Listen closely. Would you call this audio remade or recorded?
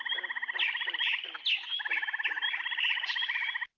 recorded